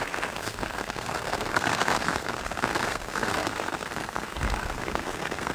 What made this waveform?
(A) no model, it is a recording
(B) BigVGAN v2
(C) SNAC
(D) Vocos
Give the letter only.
C